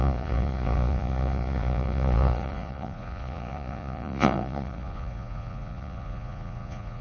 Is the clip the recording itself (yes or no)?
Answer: no